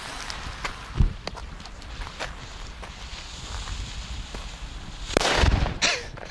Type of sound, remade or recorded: recorded